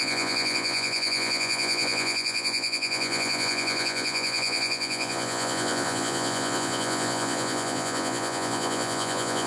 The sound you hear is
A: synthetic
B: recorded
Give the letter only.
A